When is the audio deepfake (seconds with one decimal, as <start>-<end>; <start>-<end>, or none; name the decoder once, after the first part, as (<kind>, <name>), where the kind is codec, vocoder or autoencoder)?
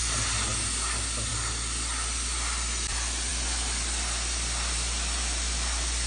none